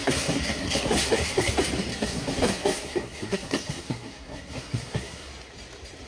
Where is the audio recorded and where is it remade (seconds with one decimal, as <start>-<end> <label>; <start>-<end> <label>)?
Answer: 0.0-1.5 remade; 1.5-1.9 recorded; 1.9-5.3 remade; 5.3-6.1 recorded